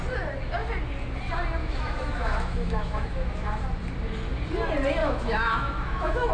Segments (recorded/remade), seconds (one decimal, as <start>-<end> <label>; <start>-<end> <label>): 0.0-1.6 recorded; 1.6-3.6 remade; 3.6-5.0 recorded; 5.0-6.3 remade